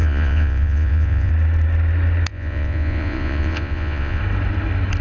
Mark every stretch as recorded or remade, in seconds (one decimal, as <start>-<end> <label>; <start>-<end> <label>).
0.0-1.3 remade; 1.3-2.3 recorded; 2.3-4.2 remade; 4.2-5.0 recorded